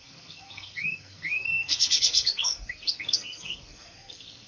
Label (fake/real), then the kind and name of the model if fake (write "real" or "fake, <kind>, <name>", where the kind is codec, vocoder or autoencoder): fake, codec, SNAC